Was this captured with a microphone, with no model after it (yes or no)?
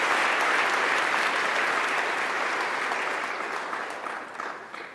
yes